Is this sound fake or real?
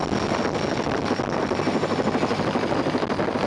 real